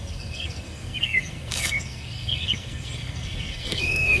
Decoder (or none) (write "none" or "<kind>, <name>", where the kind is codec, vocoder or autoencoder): codec, SNAC